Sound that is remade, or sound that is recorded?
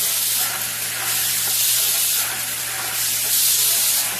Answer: recorded